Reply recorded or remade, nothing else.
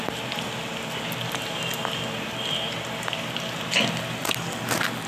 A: recorded